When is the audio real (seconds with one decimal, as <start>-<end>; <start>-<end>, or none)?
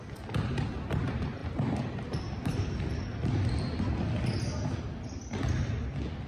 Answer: 0.0-6.3